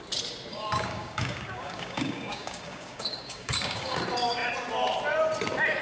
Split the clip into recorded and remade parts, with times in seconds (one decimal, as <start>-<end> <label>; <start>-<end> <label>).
0.0-0.5 recorded; 0.5-4.0 remade; 4.0-5.8 recorded